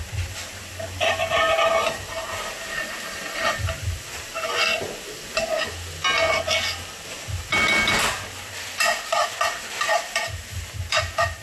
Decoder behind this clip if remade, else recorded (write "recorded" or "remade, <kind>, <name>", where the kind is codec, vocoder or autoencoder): recorded